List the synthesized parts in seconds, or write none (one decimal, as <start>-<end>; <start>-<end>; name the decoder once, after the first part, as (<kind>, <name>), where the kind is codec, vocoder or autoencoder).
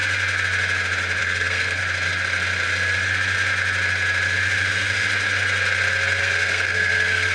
1.2-1.8 (codec, SNAC); 6.2-7.3